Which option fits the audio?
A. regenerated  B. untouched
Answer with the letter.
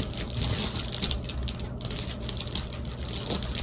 B